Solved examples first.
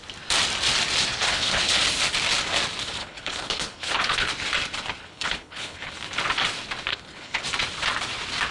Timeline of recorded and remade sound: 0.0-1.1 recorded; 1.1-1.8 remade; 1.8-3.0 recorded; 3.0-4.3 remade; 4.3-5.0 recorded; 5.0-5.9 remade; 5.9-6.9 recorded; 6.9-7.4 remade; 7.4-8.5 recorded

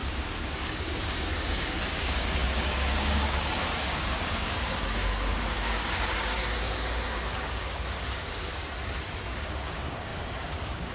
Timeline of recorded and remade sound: 0.0-8.5 remade; 8.5-9.3 recorded; 9.3-10.9 remade

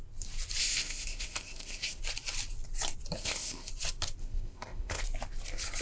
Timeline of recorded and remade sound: 0.0-0.6 recorded; 0.6-2.0 remade; 2.0-3.2 recorded; 3.2-3.7 remade; 3.7-4.2 recorded; 4.2-5.0 remade; 5.0-5.8 recorded

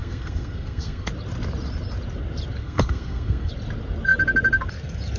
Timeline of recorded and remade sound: 0.0-1.1 remade; 1.1-2.6 recorded; 2.6-3.5 remade; 3.5-5.2 recorded

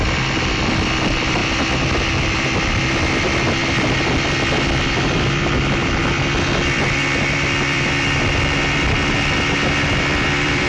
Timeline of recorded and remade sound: 0.0-1.4 remade; 1.4-3.2 recorded; 3.2-3.6 remade; 3.6-4.8 recorded; 4.8-6.0 remade; 6.0-6.6 recorded; 6.6-10.7 remade